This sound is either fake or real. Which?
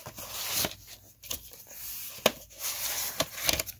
real